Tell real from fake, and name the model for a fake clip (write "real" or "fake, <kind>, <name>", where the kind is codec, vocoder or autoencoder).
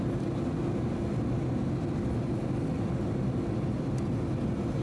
real